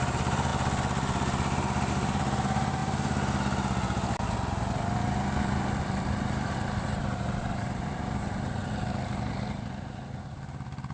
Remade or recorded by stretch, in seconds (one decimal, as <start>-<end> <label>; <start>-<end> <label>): 0.0-0.5 remade; 0.5-1.9 recorded; 1.9-2.8 remade; 2.8-5.8 recorded; 5.8-10.9 remade